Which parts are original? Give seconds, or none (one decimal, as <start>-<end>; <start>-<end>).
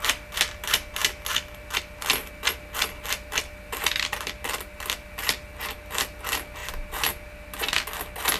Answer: 0.0-8.4